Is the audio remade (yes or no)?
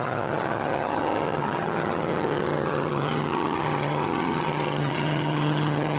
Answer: yes